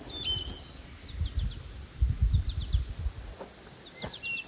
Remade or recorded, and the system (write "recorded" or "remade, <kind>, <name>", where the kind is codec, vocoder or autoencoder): recorded